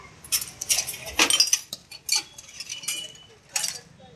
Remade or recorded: recorded